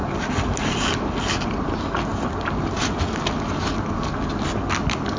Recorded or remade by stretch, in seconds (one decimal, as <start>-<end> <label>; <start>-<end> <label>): 0.0-5.2 recorded